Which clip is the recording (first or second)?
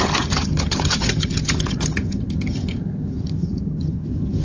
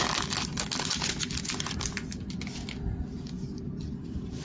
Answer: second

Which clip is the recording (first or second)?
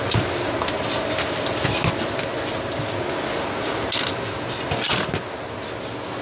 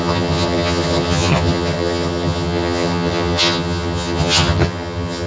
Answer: first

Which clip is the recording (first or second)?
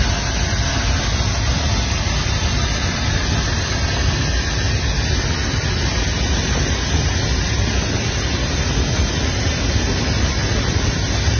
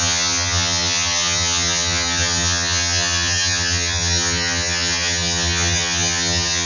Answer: first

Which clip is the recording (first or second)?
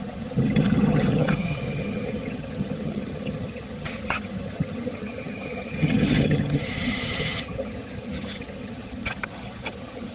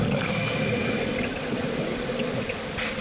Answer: second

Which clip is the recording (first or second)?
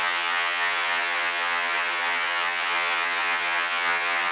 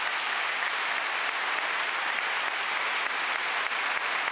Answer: second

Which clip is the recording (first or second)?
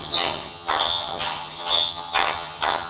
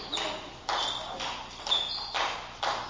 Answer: second